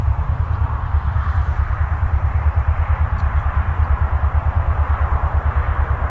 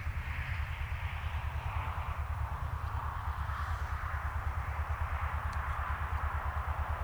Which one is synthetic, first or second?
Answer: first